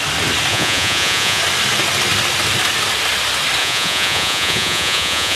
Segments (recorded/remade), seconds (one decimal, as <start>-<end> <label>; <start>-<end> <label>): 0.0-0.5 recorded; 0.5-1.4 remade; 1.4-3.6 recorded; 3.6-5.4 remade